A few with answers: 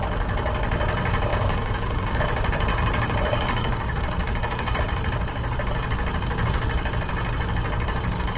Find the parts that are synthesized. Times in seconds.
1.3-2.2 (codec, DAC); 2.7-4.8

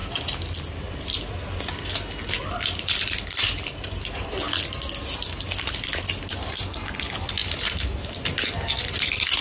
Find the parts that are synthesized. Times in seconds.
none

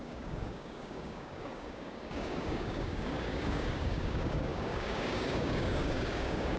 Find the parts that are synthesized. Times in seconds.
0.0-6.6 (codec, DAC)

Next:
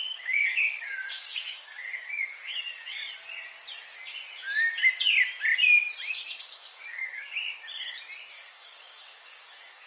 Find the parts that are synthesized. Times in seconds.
0.0-3.0 (codec, DAC); 6.4-7.4; 8.3-9.9

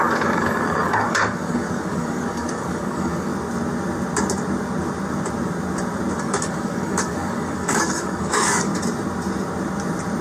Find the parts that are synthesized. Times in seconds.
0.0-3.3 (codec, DAC); 6.2-8.7